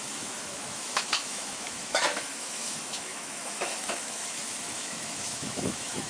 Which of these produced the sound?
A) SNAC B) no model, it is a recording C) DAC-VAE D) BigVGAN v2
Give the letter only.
C